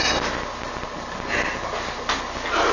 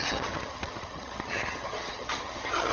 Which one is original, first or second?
first